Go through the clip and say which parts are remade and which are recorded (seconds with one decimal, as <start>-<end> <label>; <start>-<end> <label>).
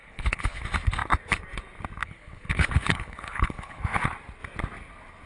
0.0-0.6 remade; 0.6-2.0 recorded; 2.0-3.8 remade; 3.8-5.3 recorded